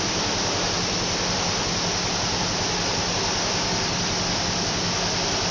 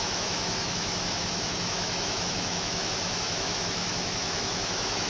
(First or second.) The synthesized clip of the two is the second